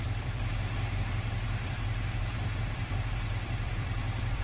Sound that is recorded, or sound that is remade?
remade